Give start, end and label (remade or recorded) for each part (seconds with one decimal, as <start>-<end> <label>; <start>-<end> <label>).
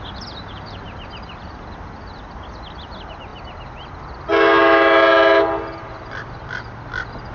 0.0-7.3 recorded